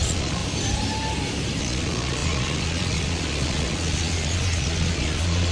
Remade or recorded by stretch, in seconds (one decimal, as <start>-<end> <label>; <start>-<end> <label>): 0.0-0.4 remade; 0.4-1.6 recorded; 1.6-5.5 remade